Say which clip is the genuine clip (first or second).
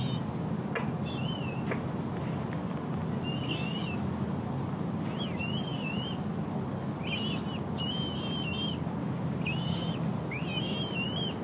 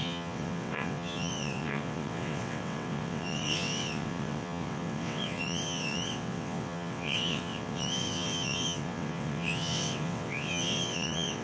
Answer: first